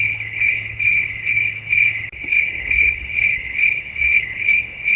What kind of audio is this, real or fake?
fake